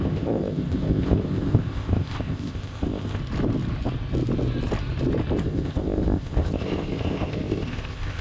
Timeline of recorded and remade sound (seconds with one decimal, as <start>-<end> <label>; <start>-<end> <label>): 0.0-3.2 remade; 3.2-5.4 recorded; 5.4-8.2 remade